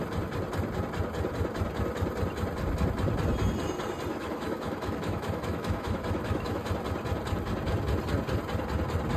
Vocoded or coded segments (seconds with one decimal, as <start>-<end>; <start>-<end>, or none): 4.1-6.7

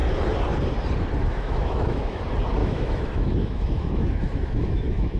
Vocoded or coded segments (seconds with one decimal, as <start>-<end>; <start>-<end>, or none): 1.2-2.2; 2.6-5.2

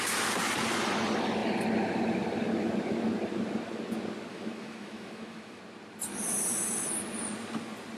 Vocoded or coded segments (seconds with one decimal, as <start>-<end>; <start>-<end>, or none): 4.3-5.6

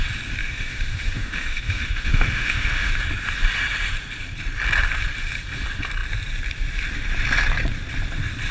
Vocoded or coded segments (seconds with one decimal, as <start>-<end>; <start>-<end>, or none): 0.4-2.9

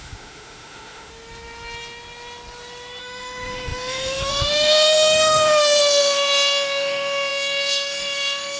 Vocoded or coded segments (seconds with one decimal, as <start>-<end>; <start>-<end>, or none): 0.0-1.1; 3.0-8.6